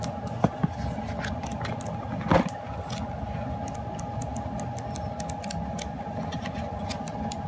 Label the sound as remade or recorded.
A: recorded